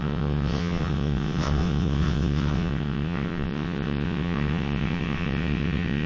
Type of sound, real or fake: fake